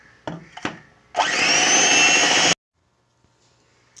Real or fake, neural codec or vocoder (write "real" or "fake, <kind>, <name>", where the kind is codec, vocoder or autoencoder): real